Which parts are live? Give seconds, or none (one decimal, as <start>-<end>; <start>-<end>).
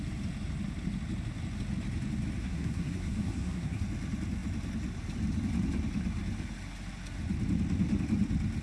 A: 0.0-2.4; 3.8-8.6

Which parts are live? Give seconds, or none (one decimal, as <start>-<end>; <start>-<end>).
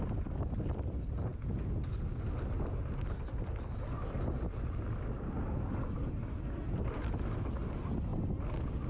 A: 0.0-8.9